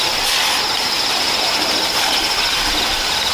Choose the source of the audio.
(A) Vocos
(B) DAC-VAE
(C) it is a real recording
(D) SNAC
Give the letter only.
C